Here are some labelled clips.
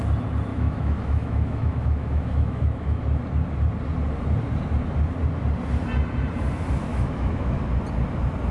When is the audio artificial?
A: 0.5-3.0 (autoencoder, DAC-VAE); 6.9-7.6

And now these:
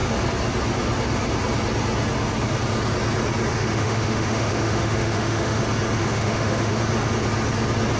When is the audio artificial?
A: 3.5-5.6 (autoencoder, DAC-VAE); 6.0-6.8

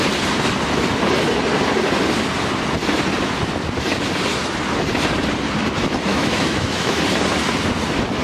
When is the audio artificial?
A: 6.1-7.0 (autoencoder, DAC-VAE)